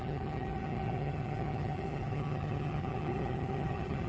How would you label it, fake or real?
fake